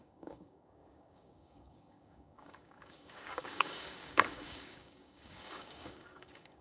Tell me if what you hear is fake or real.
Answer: fake